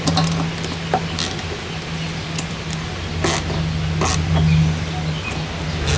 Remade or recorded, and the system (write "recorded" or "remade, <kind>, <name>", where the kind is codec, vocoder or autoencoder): recorded